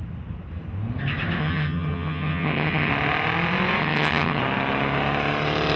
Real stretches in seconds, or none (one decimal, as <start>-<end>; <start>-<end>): 0.0-1.4; 2.9-3.8; 4.4-5.8

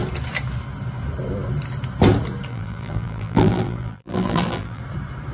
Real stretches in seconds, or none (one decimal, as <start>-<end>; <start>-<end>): 0.0-2.5; 4.8-5.3

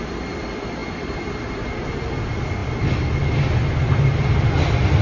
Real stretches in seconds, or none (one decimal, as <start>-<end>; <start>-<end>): 0.0-5.0

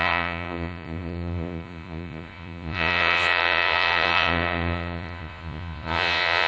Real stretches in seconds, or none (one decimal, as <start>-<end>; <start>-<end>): none

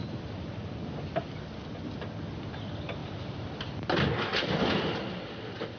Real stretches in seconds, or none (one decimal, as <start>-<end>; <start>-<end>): 0.8-3.0; 5.0-5.8

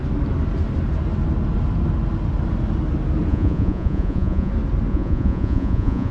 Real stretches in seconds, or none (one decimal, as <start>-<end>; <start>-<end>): 0.0-3.3; 4.5-4.9

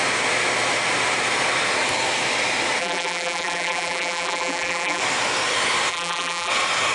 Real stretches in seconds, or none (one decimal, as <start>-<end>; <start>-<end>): 0.0-2.8; 5.0-5.9; 6.5-6.9